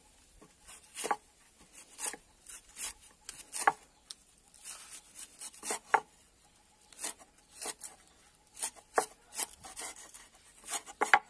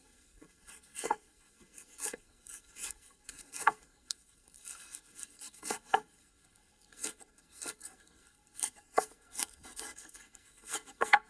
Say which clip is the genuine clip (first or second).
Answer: first